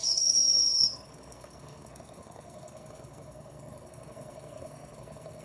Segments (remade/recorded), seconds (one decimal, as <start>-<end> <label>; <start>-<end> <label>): 0.0-5.4 remade